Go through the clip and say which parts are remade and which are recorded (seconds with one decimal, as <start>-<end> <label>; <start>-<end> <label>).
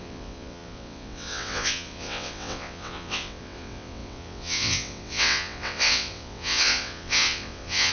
0.0-7.9 remade